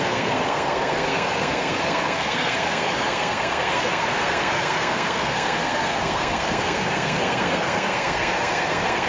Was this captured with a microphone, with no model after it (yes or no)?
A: no